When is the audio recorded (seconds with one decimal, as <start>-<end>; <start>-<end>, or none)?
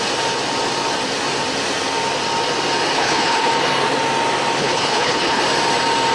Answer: 0.0-2.9; 3.5-4.6; 5.4-6.1